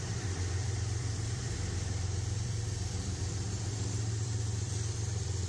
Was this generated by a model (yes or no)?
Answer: yes